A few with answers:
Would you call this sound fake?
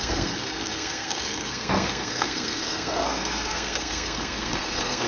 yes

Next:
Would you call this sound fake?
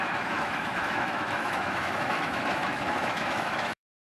yes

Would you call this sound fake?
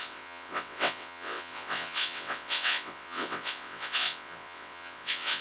yes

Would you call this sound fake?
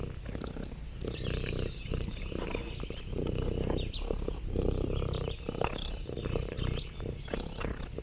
no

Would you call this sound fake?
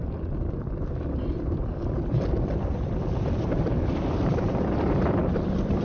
yes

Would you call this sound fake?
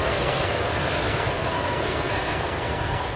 yes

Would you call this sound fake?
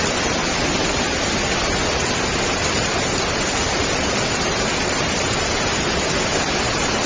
no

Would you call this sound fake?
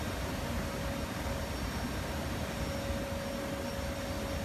no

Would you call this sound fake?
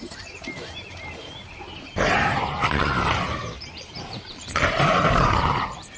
yes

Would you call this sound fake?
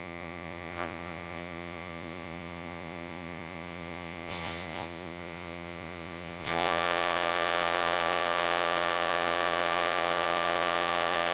yes